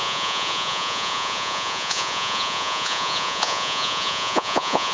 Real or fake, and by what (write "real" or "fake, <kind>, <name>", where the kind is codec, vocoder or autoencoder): fake, vocoder, Vocos